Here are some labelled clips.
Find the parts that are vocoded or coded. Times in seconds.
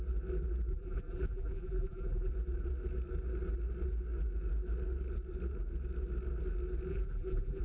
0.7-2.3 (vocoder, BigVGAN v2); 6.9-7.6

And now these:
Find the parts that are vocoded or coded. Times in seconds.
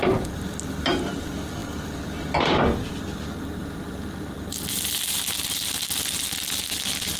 0.0-7.2 (vocoder, BigVGAN v2)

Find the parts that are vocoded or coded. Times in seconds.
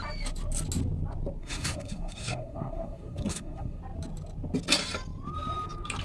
1.4-3.8 (codec, SNAC)